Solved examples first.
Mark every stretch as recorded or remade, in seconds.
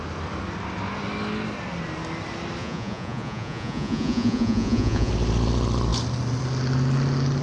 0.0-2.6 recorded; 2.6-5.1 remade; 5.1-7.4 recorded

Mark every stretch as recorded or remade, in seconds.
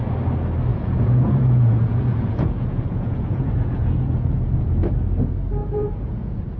0.0-0.7 recorded; 0.7-4.7 remade; 4.7-5.6 recorded; 5.6-6.6 remade